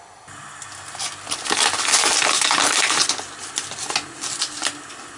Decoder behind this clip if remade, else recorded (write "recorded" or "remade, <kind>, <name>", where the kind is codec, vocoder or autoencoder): recorded